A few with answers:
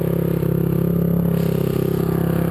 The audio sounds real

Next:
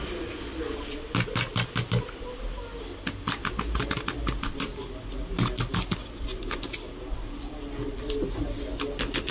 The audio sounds real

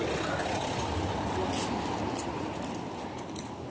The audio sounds real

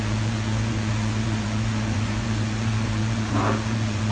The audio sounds fake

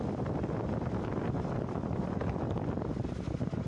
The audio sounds real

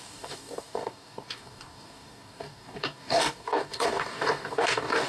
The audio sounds fake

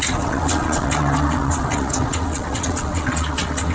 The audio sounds fake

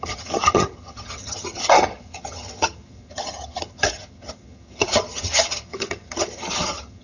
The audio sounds fake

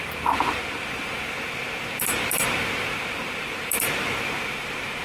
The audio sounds fake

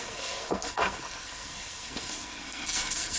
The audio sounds fake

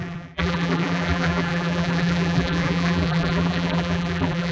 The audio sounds fake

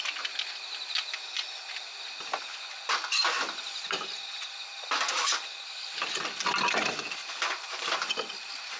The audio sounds real